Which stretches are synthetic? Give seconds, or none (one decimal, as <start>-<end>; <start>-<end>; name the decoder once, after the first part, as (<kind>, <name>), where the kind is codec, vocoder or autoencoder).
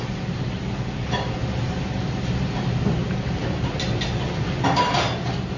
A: none